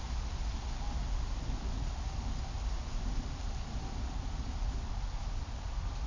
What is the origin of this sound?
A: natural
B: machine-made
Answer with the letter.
A